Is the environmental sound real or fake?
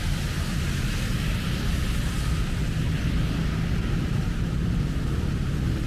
real